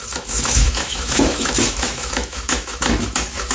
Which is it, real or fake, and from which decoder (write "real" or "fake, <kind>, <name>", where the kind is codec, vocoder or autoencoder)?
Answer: fake, autoencoder, DAC-VAE